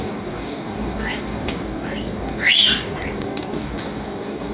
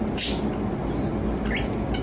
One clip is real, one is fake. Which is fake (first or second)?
first